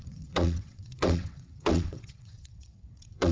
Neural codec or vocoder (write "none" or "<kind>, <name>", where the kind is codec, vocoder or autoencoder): vocoder, WaveNeXt